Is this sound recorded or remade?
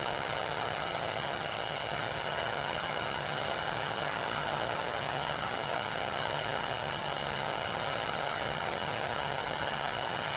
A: remade